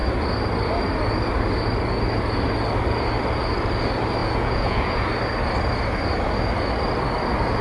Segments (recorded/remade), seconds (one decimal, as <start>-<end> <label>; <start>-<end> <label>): 0.0-4.2 recorded; 4.2-5.1 remade; 5.1-7.6 recorded